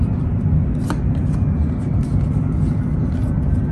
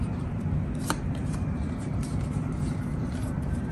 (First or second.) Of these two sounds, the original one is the first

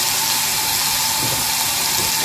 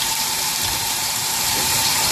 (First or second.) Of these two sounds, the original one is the first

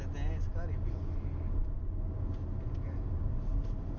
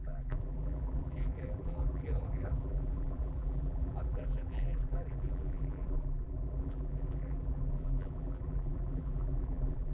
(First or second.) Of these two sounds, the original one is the first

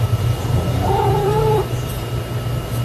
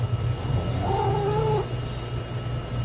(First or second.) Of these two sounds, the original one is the second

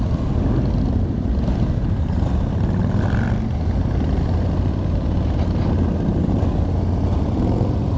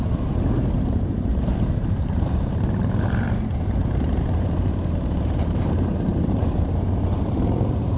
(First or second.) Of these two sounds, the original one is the first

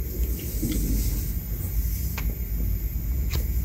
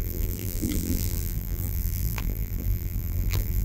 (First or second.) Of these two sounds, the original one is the first